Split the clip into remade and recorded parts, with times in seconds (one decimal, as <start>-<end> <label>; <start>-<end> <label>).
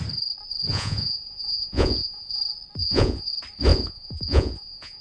0.0-0.7 recorded; 0.7-2.4 remade; 2.4-2.8 recorded; 2.8-3.3 remade; 3.3-3.7 recorded; 3.7-5.0 remade